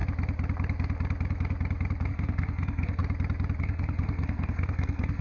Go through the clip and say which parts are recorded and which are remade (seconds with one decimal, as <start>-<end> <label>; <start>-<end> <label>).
0.0-2.1 recorded; 2.1-3.0 remade; 3.0-3.6 recorded; 3.6-5.2 remade

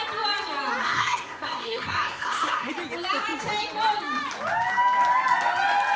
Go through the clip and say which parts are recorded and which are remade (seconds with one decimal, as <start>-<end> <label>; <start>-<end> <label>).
0.0-0.8 recorded; 0.8-2.7 remade; 2.7-6.0 recorded